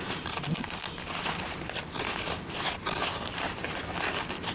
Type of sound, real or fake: real